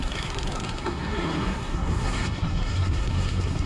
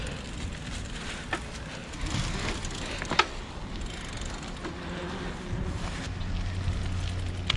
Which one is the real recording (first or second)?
second